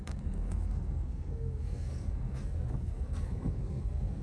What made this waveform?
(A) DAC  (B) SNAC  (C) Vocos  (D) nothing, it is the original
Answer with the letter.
B